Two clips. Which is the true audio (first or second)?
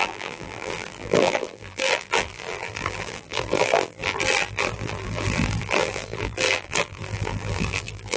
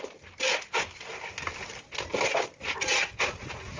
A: second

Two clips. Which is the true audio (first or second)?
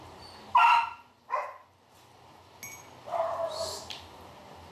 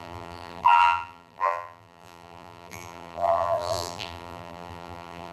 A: first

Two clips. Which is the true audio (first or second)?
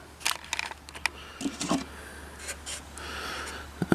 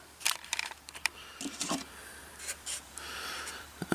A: first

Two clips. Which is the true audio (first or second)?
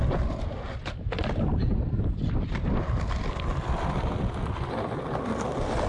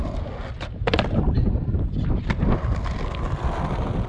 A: second